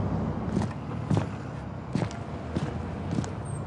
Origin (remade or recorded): recorded